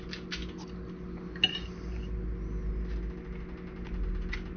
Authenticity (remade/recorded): recorded